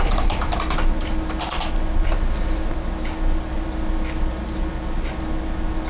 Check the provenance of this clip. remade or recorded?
recorded